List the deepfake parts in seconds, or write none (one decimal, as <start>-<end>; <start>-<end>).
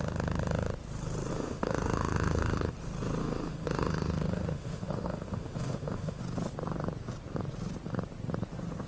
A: 1.3-2.7; 3.2-6.2